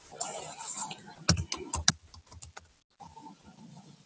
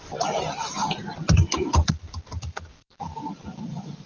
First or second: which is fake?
second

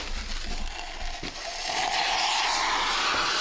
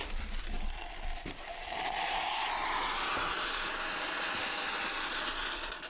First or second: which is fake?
second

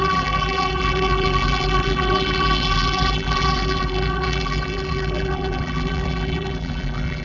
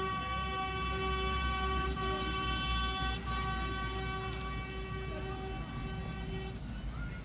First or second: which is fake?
first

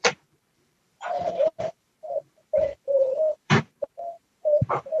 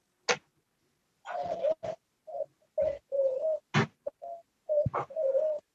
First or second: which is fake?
first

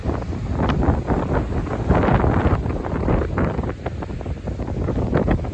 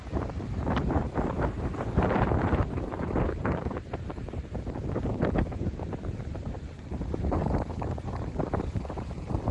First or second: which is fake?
second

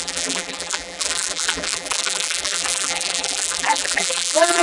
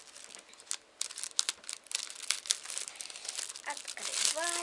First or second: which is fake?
first